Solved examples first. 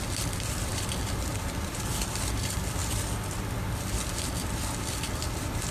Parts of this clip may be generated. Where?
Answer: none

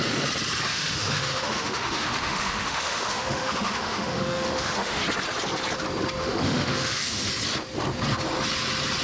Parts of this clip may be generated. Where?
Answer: 0.7-5.0 (autoencoder, DAC-VAE); 6.2-7.3